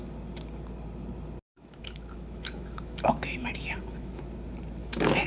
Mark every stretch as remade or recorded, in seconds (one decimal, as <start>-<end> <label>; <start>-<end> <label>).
0.0-1.5 recorded; 1.5-4.2 remade; 4.2-4.8 recorded; 4.8-5.3 remade